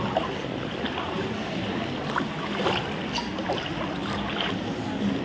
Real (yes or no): yes